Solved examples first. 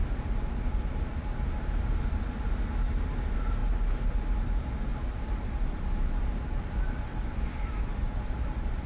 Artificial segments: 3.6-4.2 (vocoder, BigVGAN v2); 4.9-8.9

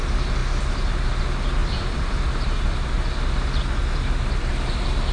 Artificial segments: 1.6-2.9 (vocoder, BigVGAN v2); 3.8-4.5

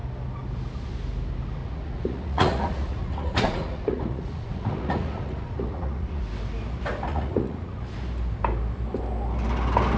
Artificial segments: 1.6-6.2 (vocoder, Vocos); 7.1-7.8

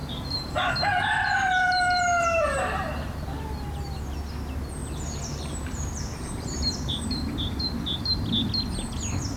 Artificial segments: 0.0-0.7 (vocoder, BigVGAN v2); 4.8-8.0

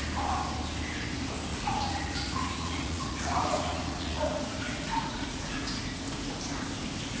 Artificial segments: 1.5-5.8 (vocoder, Vocos)

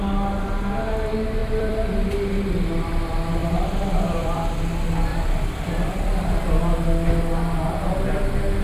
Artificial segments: 1.4-2.5 (vocoder, BigVGAN v2); 3.4-4.5; 5.1-6.6